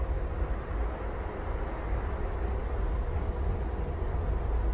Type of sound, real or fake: real